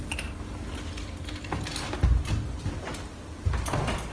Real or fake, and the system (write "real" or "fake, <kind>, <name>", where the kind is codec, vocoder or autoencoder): real